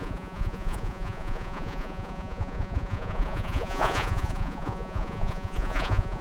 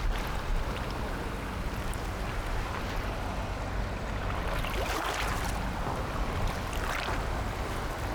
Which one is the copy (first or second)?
first